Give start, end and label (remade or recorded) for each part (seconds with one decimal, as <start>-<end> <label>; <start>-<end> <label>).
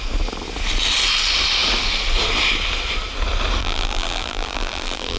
0.0-3.6 recorded; 3.6-5.2 remade